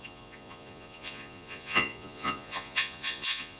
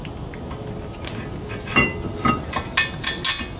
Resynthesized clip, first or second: first